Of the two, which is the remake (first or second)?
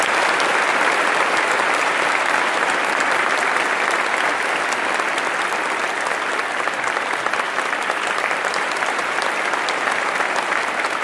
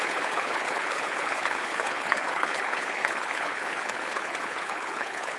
second